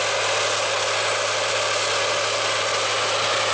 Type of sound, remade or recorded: recorded